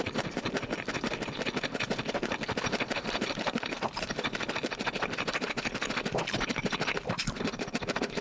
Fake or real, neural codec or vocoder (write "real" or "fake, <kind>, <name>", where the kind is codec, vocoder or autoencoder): fake, vocoder, BigVGAN v2